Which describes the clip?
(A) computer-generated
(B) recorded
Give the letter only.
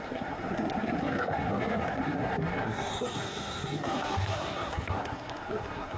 A